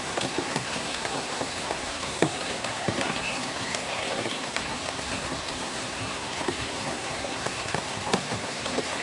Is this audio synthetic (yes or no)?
yes